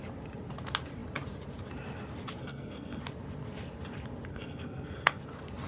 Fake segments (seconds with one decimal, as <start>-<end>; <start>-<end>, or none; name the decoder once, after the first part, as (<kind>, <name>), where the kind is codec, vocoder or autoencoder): 2.4-3.0 (codec, SNAC); 4.3-5.2

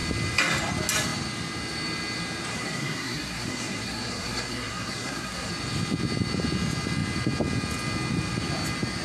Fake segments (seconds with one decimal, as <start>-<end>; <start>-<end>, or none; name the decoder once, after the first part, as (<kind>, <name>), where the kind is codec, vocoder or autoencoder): 2.5-5.5 (codec, SNAC)